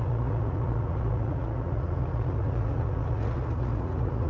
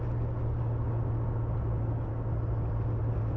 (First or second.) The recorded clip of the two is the second